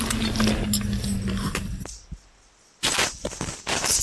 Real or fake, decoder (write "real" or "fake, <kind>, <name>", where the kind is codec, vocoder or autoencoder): real